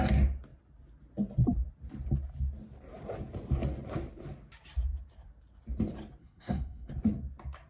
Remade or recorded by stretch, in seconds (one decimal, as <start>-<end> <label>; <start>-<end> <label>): 0.0-6.2 recorded; 6.2-6.9 remade; 6.9-7.7 recorded